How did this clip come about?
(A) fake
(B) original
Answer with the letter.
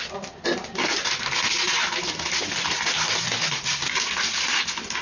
B